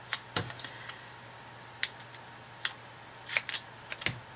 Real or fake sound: real